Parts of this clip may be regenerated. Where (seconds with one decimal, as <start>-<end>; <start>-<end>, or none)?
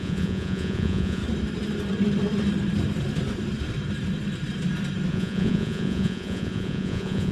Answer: 0.0-1.2; 5.1-7.3